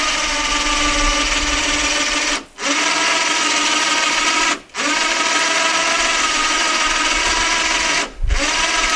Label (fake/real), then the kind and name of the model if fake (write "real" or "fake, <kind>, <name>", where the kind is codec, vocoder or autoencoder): real